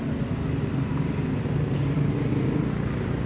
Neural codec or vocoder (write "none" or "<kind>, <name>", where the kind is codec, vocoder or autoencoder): none